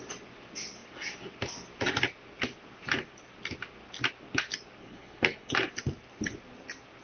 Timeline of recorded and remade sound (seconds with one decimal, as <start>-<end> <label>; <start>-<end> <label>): 0.0-4.8 recorded; 4.8-5.5 remade; 5.5-7.0 recorded